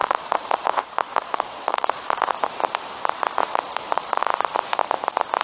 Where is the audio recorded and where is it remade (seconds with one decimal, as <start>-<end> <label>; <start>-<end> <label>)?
0.0-2.3 remade; 2.3-3.5 recorded; 3.5-4.3 remade; 4.3-5.4 recorded